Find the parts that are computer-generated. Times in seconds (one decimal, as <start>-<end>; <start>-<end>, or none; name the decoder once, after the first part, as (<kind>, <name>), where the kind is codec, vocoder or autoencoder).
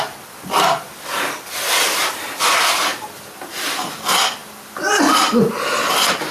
2.0-3.1 (vocoder, BigVGAN v2)